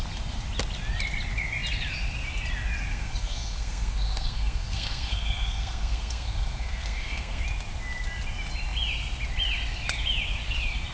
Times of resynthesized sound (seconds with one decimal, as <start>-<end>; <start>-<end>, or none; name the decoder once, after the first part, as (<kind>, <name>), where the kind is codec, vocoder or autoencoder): 2.9-7.4 (codec, SNAC)